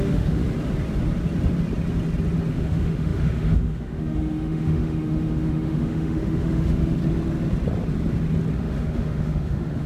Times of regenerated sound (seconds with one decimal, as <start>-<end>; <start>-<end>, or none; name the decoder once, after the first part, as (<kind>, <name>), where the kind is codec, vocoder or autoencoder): 0.0-0.4 (autoencoder, DAC-VAE); 2.5-7.0; 8.6-9.9